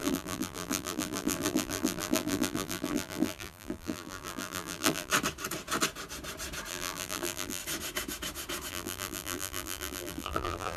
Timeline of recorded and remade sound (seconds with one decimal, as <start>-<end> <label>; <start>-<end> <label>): 0.0-5.1 remade; 5.1-6.7 recorded; 6.7-7.6 remade; 7.6-8.7 recorded; 8.7-10.8 remade